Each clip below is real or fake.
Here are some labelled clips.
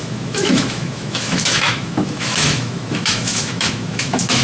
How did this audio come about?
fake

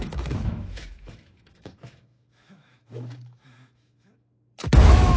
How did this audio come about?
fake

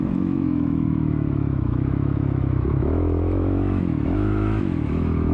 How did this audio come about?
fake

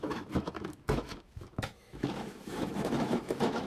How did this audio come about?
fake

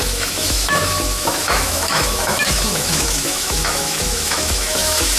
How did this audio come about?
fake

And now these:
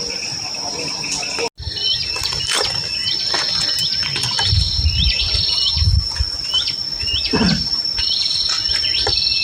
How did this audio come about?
real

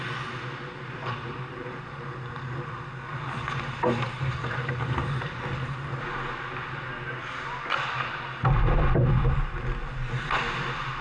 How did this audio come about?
real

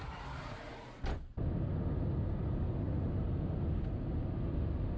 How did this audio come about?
real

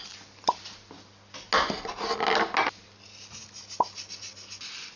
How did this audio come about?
real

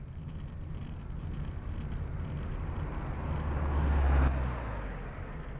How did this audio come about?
real